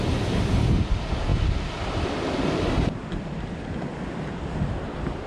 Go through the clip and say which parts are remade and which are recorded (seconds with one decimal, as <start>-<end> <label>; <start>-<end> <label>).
0.0-5.3 recorded